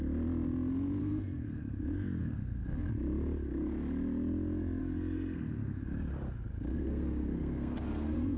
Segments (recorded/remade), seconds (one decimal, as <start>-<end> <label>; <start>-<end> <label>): 0.0-1.0 recorded; 1.0-1.6 remade; 1.6-2.2 recorded; 2.2-2.9 remade; 2.9-4.8 recorded; 4.8-5.8 remade; 5.8-6.7 recorded; 6.7-8.4 remade